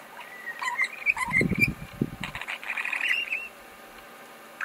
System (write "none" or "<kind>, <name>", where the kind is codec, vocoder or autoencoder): none